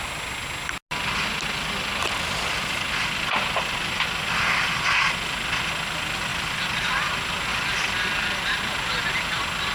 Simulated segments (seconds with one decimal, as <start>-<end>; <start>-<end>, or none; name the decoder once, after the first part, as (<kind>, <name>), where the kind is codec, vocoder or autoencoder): 2.0-4.6 (vocoder, BigVGAN v2); 6.3-7.0; 7.5-8.6